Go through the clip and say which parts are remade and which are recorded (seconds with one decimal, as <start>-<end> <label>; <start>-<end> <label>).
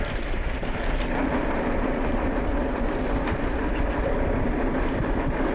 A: 0.0-5.5 recorded